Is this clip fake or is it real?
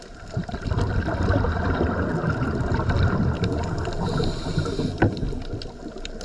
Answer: real